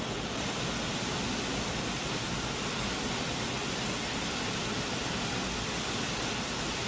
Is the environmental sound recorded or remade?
recorded